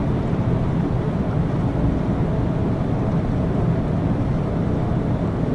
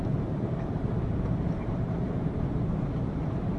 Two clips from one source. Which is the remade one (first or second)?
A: second